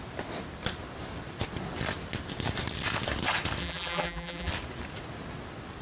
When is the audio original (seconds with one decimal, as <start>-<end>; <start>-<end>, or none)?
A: 0.0-3.6; 4.5-5.8